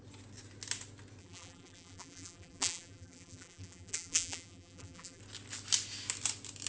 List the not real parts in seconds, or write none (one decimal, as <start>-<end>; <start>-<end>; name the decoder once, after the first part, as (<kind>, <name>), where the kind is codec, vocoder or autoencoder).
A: 1.2-5.2 (vocoder, BigVGAN v2)

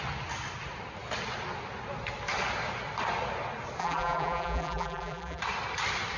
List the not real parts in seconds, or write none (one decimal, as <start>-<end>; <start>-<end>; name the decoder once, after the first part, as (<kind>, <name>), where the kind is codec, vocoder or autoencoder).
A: 3.8-5.4 (vocoder, BigVGAN v2)

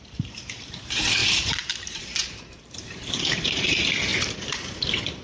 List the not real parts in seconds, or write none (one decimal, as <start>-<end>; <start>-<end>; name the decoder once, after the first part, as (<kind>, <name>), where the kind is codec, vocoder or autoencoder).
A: 0.0-5.2 (vocoder, BigVGAN v2)